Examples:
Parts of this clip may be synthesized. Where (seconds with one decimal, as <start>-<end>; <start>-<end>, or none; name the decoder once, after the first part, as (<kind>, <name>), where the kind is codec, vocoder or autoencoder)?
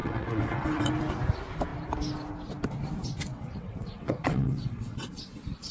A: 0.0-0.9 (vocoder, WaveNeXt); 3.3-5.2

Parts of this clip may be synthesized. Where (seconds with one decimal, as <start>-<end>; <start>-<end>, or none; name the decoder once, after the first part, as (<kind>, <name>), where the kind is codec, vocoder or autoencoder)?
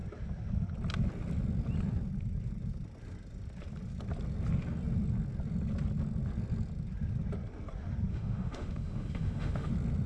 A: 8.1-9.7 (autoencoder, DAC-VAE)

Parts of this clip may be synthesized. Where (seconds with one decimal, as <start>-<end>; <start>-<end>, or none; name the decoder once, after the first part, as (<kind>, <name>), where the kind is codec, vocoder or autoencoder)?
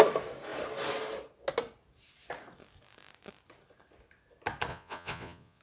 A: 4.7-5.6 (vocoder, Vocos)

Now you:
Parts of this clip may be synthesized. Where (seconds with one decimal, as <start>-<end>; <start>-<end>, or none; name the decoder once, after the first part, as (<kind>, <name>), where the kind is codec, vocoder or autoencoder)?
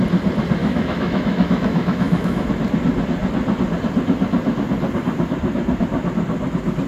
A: 0.6-2.5 (autoencoder, DAC-VAE)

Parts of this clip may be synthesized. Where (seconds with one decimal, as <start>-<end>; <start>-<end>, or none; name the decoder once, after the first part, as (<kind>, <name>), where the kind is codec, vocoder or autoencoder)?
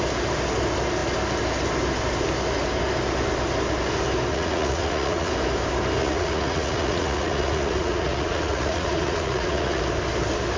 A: 4.3-5.3 (vocoder, Vocos); 6.0-9.8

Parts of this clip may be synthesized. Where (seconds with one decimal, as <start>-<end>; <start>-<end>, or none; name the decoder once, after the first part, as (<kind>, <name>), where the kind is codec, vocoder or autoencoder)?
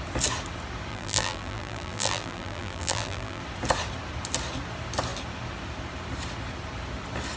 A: 0.9-3.4 (vocoder, BigVGAN v2)